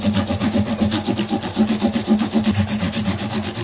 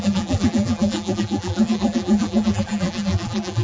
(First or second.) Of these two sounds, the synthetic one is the second